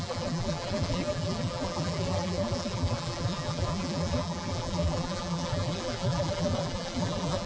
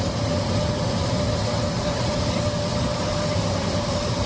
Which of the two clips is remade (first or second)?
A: first